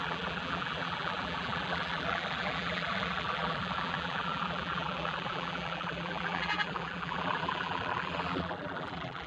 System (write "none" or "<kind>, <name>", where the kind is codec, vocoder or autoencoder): vocoder, BigVGAN v2